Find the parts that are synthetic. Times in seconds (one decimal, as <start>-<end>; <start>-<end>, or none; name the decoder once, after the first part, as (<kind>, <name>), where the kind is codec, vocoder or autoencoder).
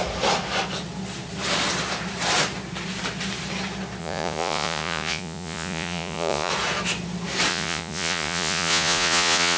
4.0-6.5 (vocoder, Vocos); 7.5-9.6